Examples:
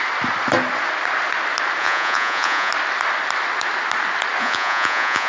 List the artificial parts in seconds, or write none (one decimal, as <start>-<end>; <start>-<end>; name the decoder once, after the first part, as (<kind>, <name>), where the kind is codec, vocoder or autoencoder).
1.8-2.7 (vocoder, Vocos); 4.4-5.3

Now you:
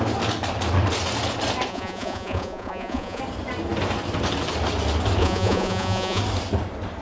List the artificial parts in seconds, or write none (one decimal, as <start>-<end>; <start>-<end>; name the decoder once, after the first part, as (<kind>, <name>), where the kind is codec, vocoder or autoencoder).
1.7-3.2 (vocoder, Vocos); 5.2-6.2

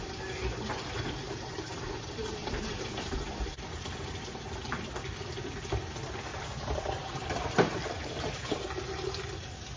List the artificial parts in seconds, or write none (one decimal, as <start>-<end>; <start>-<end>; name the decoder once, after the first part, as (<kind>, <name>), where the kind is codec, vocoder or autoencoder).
2.4-3.3 (vocoder, BigVGAN v2); 6.3-8.6